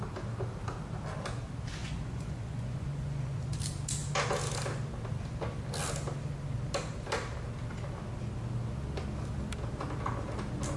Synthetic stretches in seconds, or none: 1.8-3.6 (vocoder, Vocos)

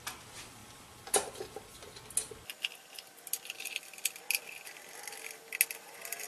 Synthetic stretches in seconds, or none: none

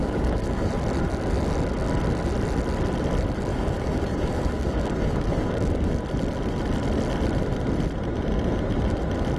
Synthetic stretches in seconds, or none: 0.0-0.7 (codec, DAC); 3.5-6.0

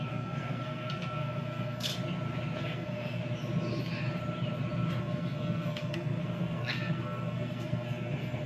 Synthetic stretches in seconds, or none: 0.0-1.9 (codec, SNAC); 2.6-3.2; 5.0-8.5

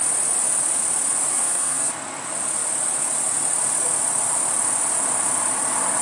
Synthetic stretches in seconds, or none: 1.3-1.9 (codec, SNAC)